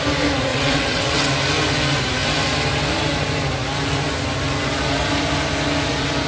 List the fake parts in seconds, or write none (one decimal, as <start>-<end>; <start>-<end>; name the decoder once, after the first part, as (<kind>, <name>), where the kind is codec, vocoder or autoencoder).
0.5-1.3 (vocoder, WaveNeXt)